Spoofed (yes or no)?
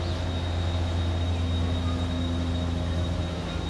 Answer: no